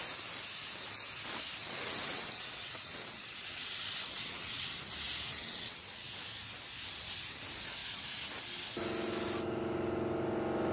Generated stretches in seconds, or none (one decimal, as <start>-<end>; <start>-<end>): 1.6-4.7; 5.3-6.2